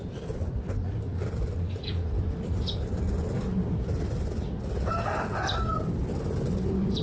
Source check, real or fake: real